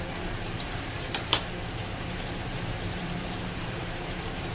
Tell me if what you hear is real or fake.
fake